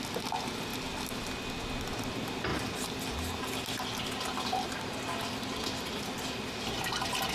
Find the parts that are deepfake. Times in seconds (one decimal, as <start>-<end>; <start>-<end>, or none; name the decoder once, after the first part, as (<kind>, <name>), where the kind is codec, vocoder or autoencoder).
none